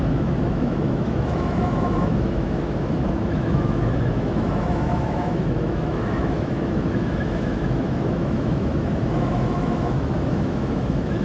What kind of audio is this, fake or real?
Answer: fake